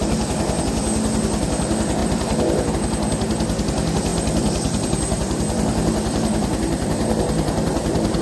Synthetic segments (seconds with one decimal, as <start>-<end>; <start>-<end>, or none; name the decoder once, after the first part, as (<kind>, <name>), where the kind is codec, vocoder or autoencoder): 0.0-0.6 (vocoder, BigVGAN v2); 2.0-2.7; 4.1-8.2